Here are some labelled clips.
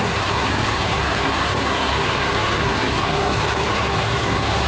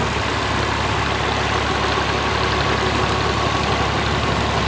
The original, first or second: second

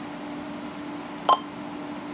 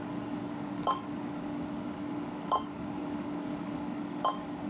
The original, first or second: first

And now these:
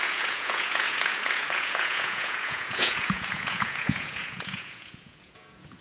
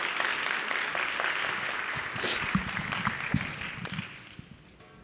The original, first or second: second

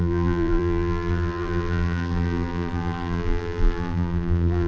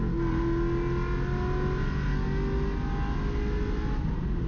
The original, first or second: second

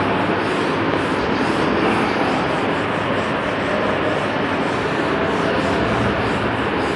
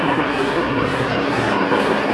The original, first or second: first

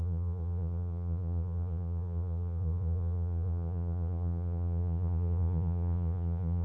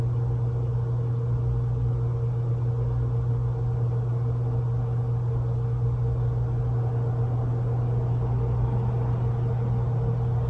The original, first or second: second